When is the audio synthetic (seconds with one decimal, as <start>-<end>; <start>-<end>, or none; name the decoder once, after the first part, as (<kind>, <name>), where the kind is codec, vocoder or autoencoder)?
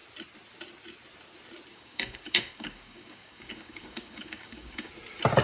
1.7-4.9 (codec, DAC)